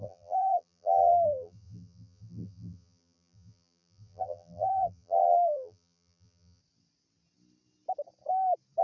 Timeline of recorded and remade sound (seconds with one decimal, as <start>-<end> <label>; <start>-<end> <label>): 0.0-6.6 remade; 6.6-8.8 recorded